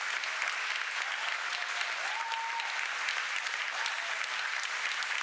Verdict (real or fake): real